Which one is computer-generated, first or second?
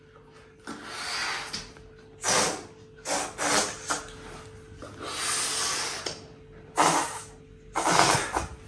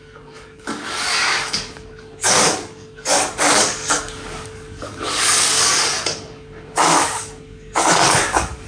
second